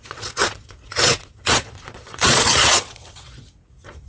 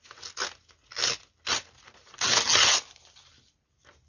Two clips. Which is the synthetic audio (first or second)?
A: first